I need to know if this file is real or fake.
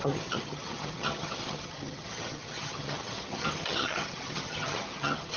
fake